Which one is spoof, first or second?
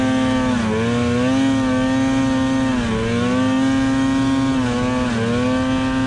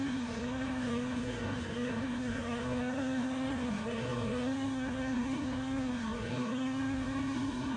second